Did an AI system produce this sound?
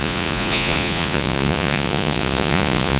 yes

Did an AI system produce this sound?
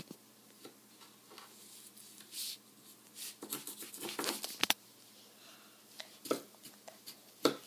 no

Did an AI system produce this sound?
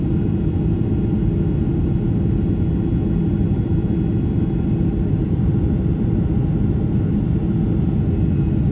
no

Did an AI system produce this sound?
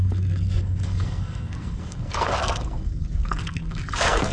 yes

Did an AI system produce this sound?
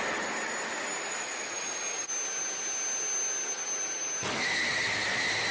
no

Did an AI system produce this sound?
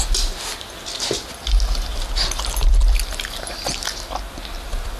no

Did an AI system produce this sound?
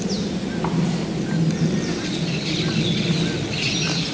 no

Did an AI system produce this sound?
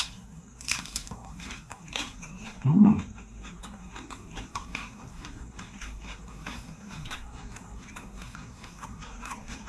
yes